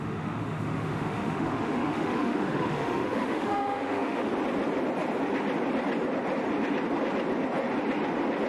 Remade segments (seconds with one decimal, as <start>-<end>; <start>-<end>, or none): 0.0-4.3